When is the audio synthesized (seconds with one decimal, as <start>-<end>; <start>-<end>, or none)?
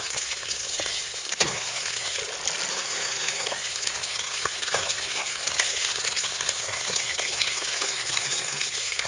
0.0-2.2; 2.7-9.1